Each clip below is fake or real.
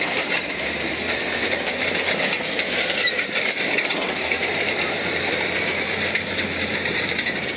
fake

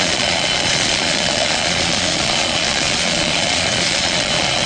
fake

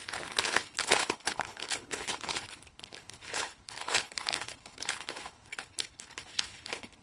fake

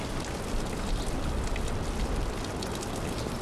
real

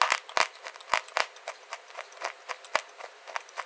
real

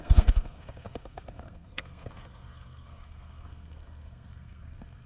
fake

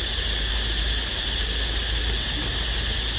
real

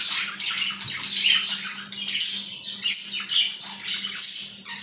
real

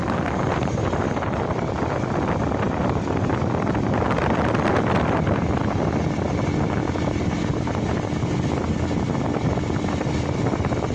real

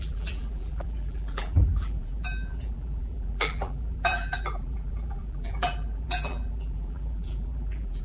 fake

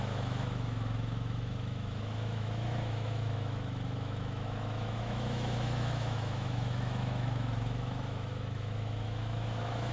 fake